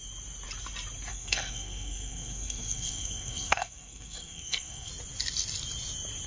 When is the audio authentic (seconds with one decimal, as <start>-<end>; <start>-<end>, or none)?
0.0-1.1; 4.9-6.3